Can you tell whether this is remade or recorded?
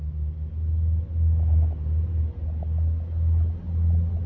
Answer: recorded